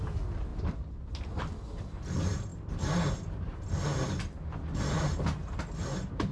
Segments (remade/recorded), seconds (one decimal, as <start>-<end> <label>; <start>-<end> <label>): 0.0-6.3 recorded

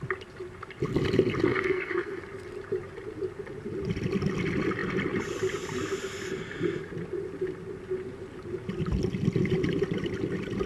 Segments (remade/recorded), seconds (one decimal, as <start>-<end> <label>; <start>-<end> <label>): 0.0-1.5 recorded; 1.5-2.2 remade; 2.2-10.7 recorded